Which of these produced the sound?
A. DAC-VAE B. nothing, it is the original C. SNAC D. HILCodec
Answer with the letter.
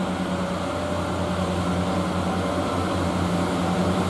B